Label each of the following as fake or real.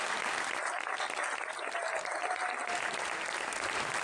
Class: real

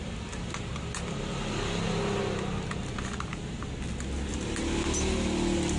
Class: real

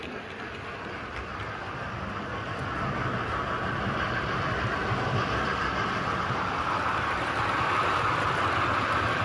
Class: fake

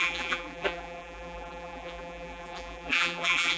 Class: fake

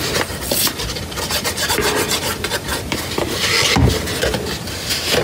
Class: real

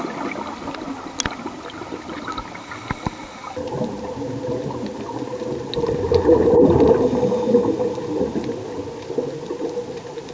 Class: real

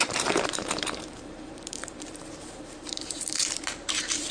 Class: fake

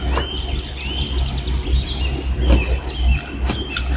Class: real